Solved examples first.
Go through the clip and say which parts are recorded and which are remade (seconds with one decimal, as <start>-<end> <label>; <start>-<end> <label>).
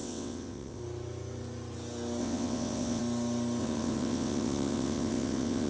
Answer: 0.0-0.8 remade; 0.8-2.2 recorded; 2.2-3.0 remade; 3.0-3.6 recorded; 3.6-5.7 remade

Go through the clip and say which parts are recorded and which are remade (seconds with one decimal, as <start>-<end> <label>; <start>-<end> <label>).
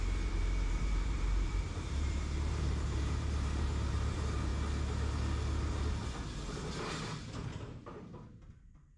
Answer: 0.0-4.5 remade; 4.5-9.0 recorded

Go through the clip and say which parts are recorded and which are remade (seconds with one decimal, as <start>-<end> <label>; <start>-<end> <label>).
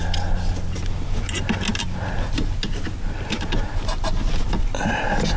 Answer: 0.0-5.4 recorded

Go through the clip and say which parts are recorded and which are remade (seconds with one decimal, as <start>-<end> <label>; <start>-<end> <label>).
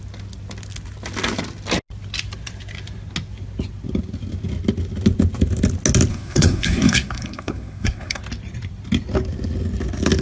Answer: 0.0-6.1 recorded; 6.1-8.2 remade; 8.2-10.2 recorded